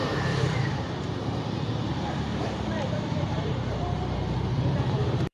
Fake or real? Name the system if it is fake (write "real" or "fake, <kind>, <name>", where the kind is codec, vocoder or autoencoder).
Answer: fake, vocoder, BigVGAN v2